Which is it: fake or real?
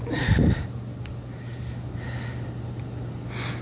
real